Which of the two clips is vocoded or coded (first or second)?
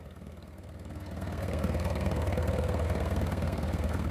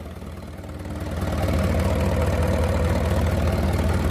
first